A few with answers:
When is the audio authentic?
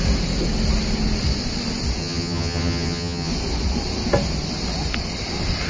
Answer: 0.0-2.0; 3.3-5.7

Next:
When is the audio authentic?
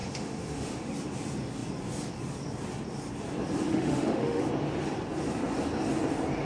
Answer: 0.9-3.7; 4.4-6.4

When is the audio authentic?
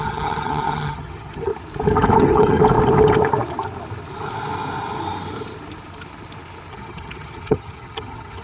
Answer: 1.5-2.2; 2.6-6.7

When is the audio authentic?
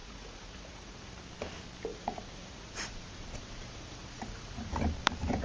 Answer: 1.1-1.9; 4.8-5.4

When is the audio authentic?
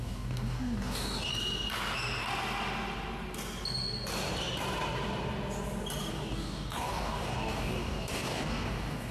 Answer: 1.3-6.1